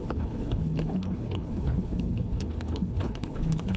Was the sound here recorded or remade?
remade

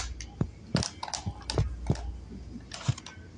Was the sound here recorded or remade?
recorded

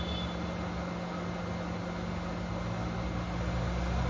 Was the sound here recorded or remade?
recorded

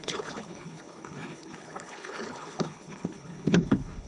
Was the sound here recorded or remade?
remade